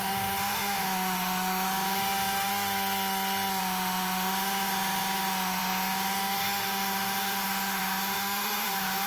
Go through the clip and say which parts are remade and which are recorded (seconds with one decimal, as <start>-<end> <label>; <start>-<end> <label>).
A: 0.0-2.5 remade; 2.5-3.6 recorded; 3.6-9.1 remade

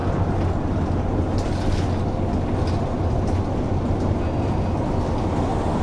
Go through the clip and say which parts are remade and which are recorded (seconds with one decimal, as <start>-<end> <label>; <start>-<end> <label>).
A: 0.0-5.8 recorded

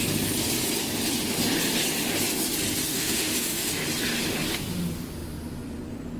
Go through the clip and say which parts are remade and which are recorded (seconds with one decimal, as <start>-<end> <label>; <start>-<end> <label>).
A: 0.0-2.8 recorded; 2.8-3.7 remade; 3.7-6.2 recorded

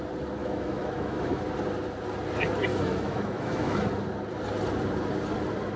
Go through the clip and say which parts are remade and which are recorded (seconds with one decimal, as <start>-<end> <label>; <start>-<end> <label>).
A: 0.0-0.4 recorded; 0.4-1.4 remade; 1.4-2.7 recorded; 2.7-3.9 remade; 3.9-5.8 recorded

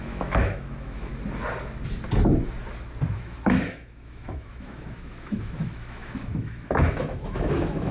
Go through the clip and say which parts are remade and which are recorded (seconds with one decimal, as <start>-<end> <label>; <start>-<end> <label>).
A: 0.0-1.1 remade; 1.1-3.1 recorded; 3.1-7.9 remade

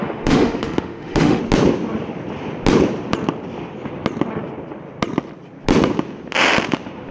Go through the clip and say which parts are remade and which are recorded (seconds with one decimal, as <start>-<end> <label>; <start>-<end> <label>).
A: 0.0-1.4 remade; 1.4-7.1 recorded